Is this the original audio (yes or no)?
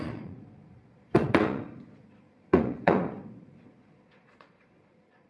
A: no